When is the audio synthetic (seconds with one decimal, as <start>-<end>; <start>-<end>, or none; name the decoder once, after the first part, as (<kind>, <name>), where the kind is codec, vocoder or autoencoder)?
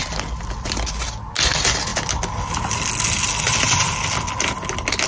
none